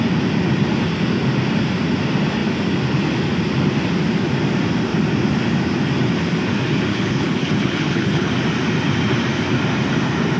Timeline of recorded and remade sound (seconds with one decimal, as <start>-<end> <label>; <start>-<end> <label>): 0.0-6.9 recorded; 6.9-8.3 remade; 8.3-10.4 recorded